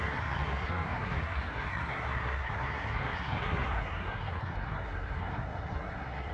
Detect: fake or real fake